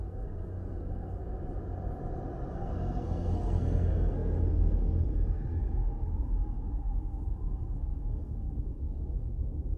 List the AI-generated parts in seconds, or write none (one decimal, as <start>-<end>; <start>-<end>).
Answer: 0.0-1.2; 2.5-9.8